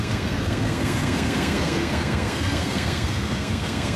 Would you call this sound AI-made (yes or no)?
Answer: yes